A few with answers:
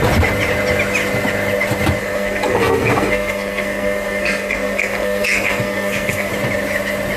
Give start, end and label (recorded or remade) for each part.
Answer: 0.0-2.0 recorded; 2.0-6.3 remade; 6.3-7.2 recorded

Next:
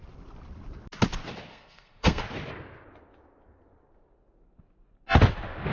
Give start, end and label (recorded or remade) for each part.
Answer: 0.0-1.5 recorded; 1.5-2.2 remade; 2.2-5.7 recorded

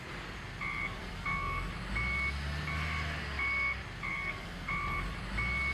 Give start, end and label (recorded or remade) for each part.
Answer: 0.0-1.0 recorded; 1.0-1.7 remade; 1.7-4.1 recorded; 4.1-4.7 remade; 4.7-5.7 recorded

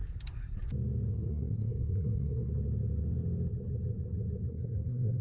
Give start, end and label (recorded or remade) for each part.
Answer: 0.0-1.1 recorded; 1.1-2.5 remade; 2.5-4.5 recorded; 4.5-5.2 remade

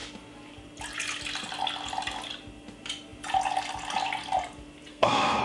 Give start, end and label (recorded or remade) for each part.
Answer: 0.0-4.9 recorded; 4.9-5.4 remade

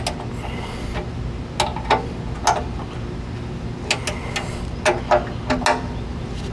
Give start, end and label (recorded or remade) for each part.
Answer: 0.0-6.5 recorded

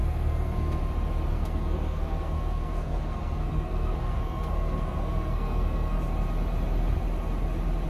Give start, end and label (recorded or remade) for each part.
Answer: 0.0-0.8 remade; 0.8-1.3 recorded; 1.3-6.0 remade; 6.0-7.9 recorded